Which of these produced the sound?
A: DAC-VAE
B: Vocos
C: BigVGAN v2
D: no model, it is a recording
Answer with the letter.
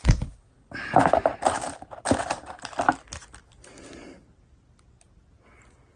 D